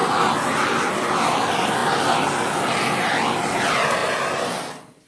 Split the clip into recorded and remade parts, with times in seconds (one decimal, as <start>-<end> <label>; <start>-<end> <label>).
0.0-5.1 recorded